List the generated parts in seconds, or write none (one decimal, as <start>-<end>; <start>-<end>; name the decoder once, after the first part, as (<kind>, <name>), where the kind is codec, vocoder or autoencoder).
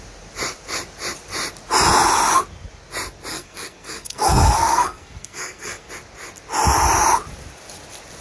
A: 3.3-5.9 (codec, SNAC)